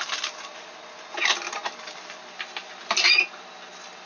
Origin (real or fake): real